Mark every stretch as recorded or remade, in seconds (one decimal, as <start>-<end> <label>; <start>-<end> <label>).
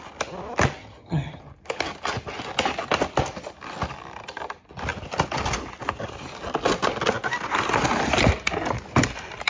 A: 0.0-0.8 recorded; 0.8-1.4 remade; 1.4-9.5 recorded